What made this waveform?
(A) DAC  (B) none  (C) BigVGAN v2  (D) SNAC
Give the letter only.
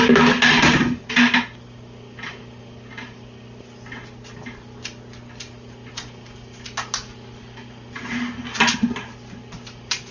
B